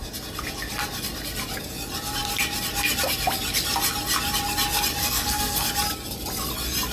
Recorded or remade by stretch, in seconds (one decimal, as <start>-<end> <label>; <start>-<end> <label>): 0.0-5.0 recorded; 5.0-5.7 remade; 5.7-6.9 recorded